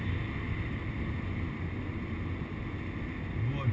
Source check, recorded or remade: recorded